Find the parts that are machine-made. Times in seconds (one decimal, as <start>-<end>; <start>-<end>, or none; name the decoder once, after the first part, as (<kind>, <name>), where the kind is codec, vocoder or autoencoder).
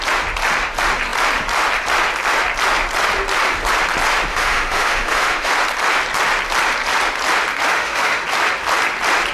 4.3-5.5 (autoencoder, DAC-VAE); 7.7-8.2